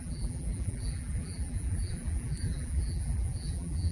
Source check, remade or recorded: remade